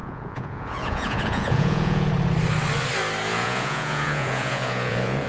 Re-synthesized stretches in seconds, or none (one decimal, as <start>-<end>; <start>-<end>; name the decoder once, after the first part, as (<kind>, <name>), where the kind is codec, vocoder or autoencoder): 0.0-2.1 (vocoder, Vocos); 3.3-5.3